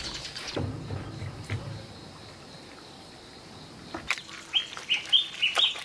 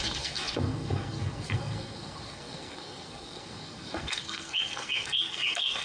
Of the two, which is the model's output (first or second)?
second